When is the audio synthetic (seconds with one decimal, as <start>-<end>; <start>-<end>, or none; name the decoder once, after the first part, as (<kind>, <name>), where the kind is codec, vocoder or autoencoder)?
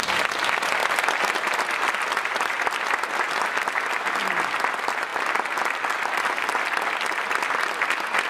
none